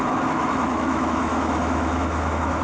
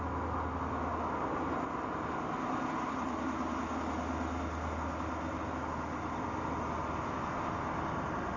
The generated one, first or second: first